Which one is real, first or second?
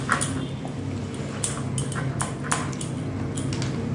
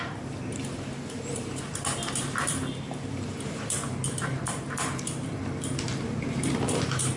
first